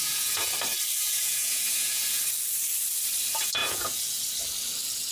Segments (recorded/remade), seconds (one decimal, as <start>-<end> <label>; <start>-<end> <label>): 0.0-0.5 remade; 0.5-1.0 recorded; 1.0-2.3 remade; 2.3-3.6 recorded; 3.6-4.2 remade; 4.2-5.1 recorded